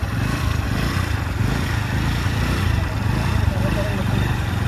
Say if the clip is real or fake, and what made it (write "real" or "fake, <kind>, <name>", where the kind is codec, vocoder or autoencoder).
real